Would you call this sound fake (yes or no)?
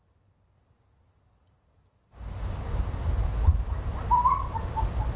no